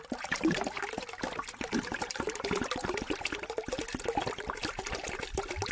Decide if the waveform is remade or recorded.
recorded